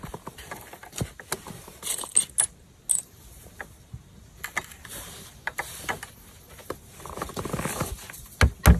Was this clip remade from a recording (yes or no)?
no